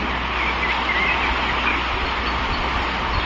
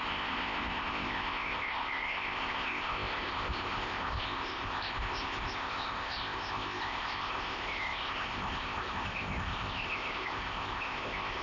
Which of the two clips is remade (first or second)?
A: second